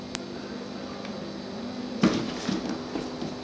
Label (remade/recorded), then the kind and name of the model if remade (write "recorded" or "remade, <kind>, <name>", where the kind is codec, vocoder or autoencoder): recorded